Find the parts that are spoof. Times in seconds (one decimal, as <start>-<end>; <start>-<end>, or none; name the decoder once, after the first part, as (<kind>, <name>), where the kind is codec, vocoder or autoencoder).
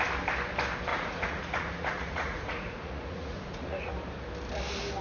0.9-3.9 (vocoder, Vocos)